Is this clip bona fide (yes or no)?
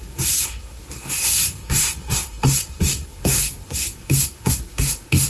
no